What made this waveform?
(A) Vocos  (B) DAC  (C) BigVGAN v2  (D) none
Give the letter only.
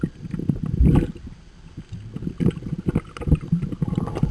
D